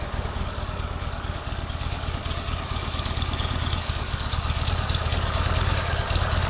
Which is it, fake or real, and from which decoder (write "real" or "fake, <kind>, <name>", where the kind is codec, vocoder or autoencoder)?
fake, codec, DAC